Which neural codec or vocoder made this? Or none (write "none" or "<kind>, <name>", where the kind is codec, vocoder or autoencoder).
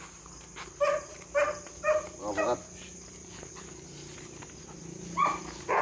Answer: none